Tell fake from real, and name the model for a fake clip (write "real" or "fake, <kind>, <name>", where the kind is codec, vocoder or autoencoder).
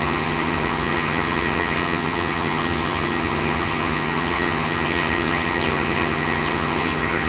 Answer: fake, vocoder, HiFi-GAN